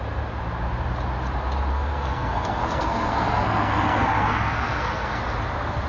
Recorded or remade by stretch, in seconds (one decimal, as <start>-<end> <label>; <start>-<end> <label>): 0.0-1.7 recorded; 1.7-5.2 remade; 5.2-5.9 recorded